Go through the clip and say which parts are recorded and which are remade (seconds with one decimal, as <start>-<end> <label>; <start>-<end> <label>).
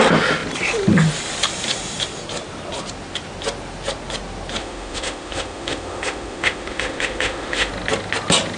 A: 0.0-4.6 recorded; 4.6-7.7 remade; 7.7-8.6 recorded